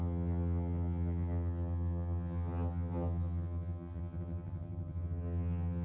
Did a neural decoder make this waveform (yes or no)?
yes